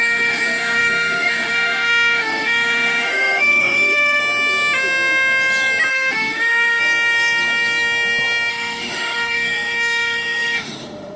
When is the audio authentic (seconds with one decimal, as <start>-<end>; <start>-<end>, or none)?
4.2-5.9; 6.8-8.5